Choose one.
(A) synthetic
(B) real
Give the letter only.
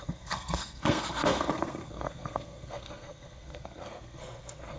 A